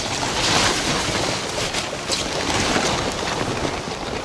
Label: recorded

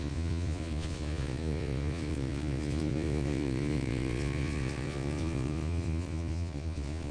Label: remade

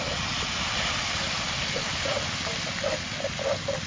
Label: recorded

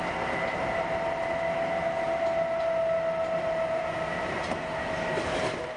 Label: recorded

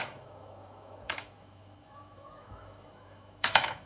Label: remade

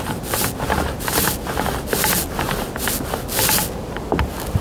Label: recorded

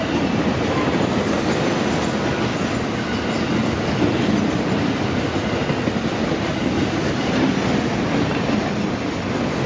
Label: recorded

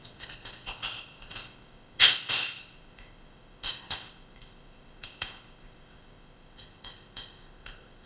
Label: remade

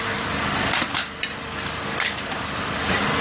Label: recorded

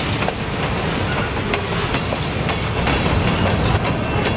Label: recorded